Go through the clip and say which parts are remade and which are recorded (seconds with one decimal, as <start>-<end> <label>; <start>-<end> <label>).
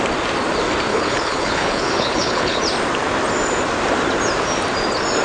0.0-0.9 recorded; 0.9-2.6 remade; 2.6-5.2 recorded